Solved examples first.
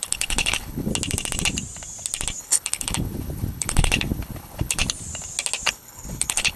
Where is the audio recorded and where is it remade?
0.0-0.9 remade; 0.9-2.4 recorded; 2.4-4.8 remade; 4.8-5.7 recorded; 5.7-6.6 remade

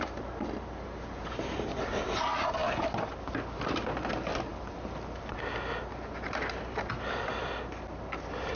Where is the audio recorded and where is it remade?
0.0-8.6 recorded

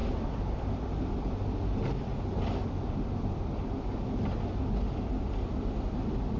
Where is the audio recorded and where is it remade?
0.0-6.4 recorded

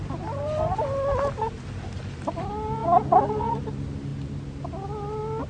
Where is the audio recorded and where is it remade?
0.0-5.5 recorded

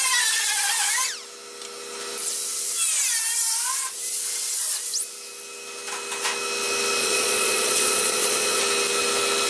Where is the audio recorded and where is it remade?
0.0-7.0 recorded; 7.0-8.6 remade; 8.6-9.5 recorded

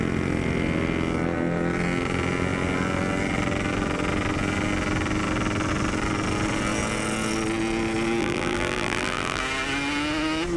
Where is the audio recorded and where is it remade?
0.0-8.2 recorded; 8.2-9.4 remade; 9.4-10.6 recorded

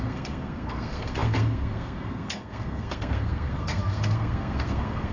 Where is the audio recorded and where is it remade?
0.0-5.1 remade